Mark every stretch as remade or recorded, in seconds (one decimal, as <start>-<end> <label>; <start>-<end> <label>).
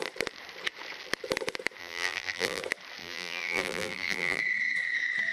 0.0-1.8 recorded; 1.8-2.6 remade; 2.6-3.0 recorded; 3.0-4.4 remade; 4.4-5.3 recorded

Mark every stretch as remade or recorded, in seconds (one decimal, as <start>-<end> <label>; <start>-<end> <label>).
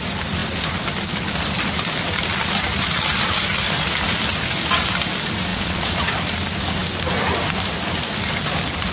0.0-5.5 recorded; 5.5-6.1 remade; 6.1-8.9 recorded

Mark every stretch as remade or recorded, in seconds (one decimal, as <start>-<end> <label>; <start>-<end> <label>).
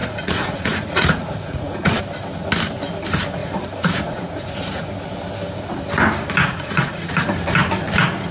0.0-2.0 remade; 2.0-3.4 recorded; 3.4-4.9 remade; 4.9-6.4 recorded; 6.4-7.3 remade; 7.3-8.3 recorded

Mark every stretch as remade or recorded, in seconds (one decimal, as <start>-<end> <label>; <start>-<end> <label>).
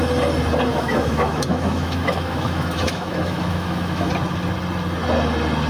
0.0-0.7 recorded; 0.7-4.1 remade; 4.1-5.7 recorded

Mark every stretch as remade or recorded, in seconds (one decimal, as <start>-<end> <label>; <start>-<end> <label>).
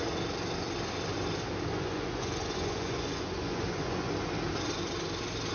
0.0-1.7 recorded; 1.7-4.1 remade; 4.1-5.5 recorded